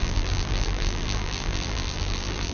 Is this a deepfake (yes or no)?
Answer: yes